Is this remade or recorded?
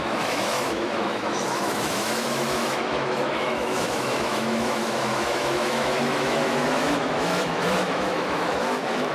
remade